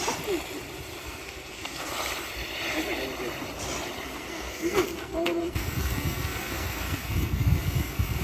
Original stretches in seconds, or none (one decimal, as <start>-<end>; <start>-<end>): 0.0-1.0; 1.9-4.1